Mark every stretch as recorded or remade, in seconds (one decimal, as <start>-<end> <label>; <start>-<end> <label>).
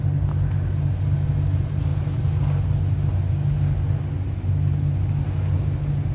0.0-6.1 recorded